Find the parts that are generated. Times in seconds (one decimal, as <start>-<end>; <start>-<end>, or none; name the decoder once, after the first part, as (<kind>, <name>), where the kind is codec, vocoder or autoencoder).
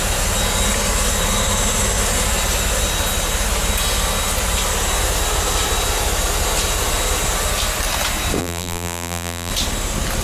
8.4-9.5 (vocoder, BigVGAN v2)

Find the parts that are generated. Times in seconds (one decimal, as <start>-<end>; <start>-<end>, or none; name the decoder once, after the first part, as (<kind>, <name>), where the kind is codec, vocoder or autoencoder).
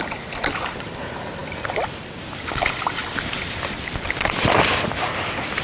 none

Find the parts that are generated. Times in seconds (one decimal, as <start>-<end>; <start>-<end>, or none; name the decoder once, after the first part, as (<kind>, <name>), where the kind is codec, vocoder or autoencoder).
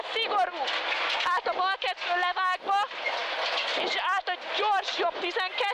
none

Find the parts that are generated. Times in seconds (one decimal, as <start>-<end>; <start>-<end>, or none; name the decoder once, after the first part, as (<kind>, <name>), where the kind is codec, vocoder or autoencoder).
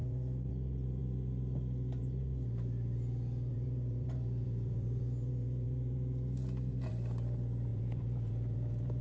0.0-0.5 (vocoder, Vocos); 3.5-6.9; 7.7-9.0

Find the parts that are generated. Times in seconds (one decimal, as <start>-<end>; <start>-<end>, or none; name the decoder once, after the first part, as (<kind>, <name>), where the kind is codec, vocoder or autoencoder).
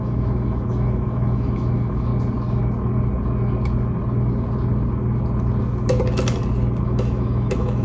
0.0-2.1 (autoencoder, DAC-VAE); 6.8-7.8